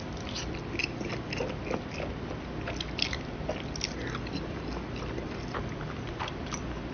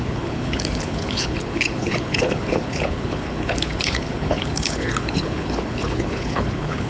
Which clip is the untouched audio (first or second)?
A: first